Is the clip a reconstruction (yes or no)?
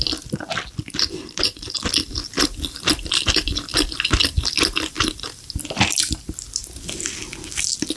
no